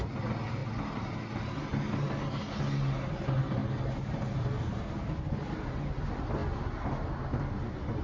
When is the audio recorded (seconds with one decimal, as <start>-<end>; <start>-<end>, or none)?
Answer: 0.0-8.0

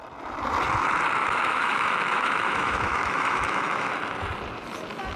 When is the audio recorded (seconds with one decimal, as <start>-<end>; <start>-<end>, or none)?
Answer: 0.0-1.2; 3.9-5.2

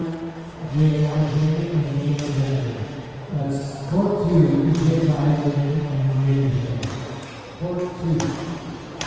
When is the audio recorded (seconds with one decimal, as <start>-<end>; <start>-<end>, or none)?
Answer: 3.4-5.3; 6.7-9.1

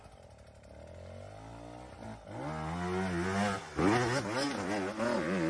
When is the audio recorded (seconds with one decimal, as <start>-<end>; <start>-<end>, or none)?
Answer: 0.0-5.5

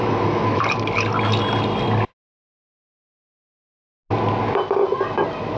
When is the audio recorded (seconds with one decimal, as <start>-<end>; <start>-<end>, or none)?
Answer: 0.6-5.6